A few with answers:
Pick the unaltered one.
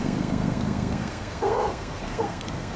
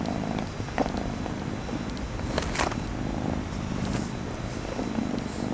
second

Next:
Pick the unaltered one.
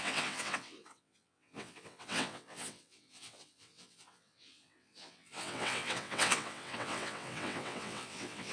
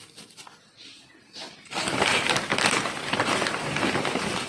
second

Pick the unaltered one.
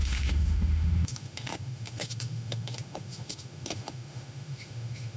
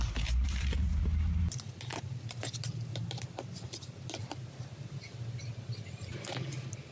second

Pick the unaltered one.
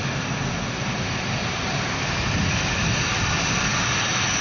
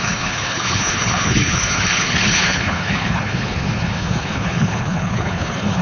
first